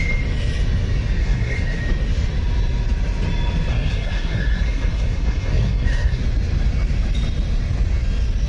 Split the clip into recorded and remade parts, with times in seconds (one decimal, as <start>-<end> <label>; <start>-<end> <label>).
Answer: 0.0-1.2 recorded; 1.2-1.8 remade; 1.8-3.7 recorded; 3.7-6.2 remade; 6.2-8.5 recorded